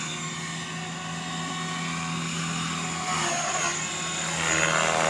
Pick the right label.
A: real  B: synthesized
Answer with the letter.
A